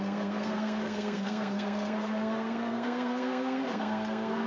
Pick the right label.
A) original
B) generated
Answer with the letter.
B